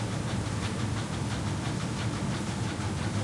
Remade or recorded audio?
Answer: recorded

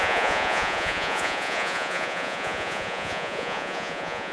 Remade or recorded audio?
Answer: remade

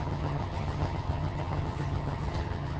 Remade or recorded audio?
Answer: remade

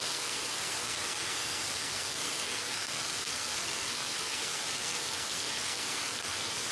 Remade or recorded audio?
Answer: remade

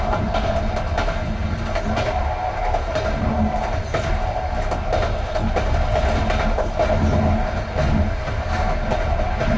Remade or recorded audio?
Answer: recorded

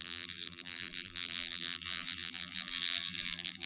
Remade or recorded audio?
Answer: remade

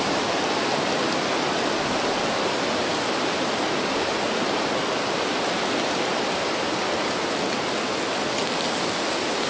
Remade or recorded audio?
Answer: recorded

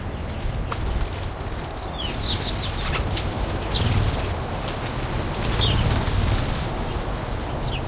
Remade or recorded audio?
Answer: recorded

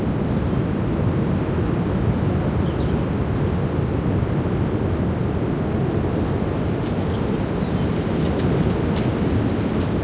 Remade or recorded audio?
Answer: recorded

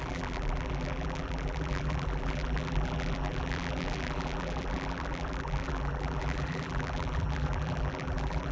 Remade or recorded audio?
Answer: remade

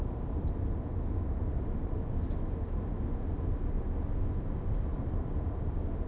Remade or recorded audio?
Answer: recorded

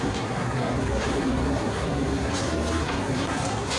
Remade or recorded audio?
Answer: remade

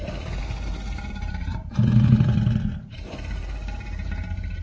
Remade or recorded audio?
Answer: remade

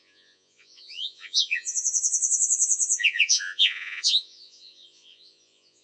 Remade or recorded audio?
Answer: remade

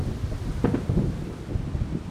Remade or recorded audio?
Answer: recorded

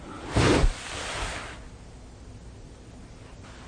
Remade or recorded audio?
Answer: recorded